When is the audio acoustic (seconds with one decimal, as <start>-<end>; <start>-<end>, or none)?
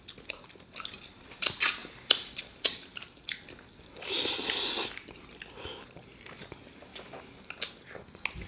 0.0-1.8; 4.7-6.9; 7.7-8.5